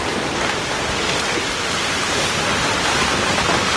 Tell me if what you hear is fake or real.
fake